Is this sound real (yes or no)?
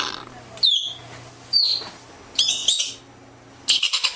yes